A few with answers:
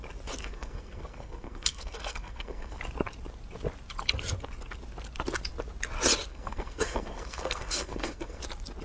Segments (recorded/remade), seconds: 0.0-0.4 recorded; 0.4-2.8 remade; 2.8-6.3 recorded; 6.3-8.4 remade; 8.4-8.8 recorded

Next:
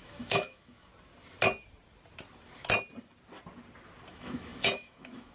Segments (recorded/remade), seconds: 0.0-0.9 remade; 0.9-4.1 recorded; 4.1-5.3 remade

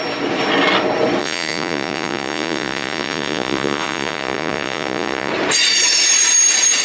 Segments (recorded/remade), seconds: 0.0-1.2 recorded; 1.2-5.3 remade; 5.3-6.8 recorded

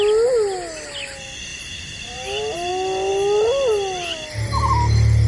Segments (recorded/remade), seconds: 0.0-1.5 recorded; 1.5-2.7 remade; 2.7-5.3 recorded

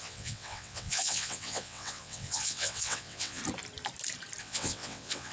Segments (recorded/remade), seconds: 0.0-3.4 remade; 3.4-4.4 recorded; 4.4-5.3 remade

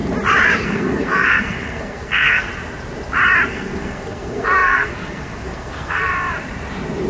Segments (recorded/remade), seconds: 0.0-0.6 recorded; 0.6-2.5 remade; 2.5-3.5 recorded; 3.5-6.1 remade; 6.1-7.1 recorded

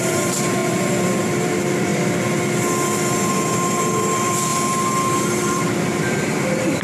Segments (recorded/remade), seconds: 0.0-1.9 remade; 1.9-4.0 recorded; 4.0-4.5 remade; 4.5-5.5 recorded; 5.5-6.8 remade